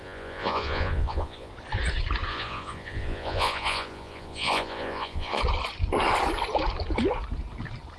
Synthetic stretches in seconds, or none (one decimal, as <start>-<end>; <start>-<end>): 0.0-1.5; 2.3-5.4